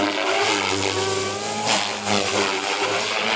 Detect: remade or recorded recorded